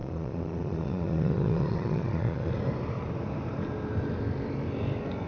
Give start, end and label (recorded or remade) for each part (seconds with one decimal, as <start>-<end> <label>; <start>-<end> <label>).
0.0-2.5 remade; 2.5-5.3 recorded